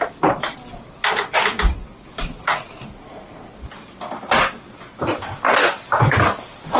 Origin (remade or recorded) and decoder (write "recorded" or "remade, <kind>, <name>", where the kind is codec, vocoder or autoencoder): remade, vocoder, BigVGAN v2